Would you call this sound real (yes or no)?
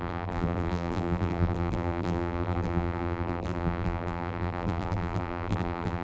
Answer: no